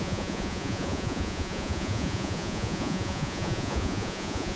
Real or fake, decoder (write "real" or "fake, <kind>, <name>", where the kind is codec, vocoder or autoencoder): fake, vocoder, Vocos